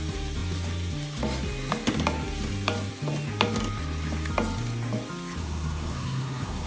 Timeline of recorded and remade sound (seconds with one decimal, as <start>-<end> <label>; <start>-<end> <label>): 0.0-5.4 recorded; 5.4-6.7 remade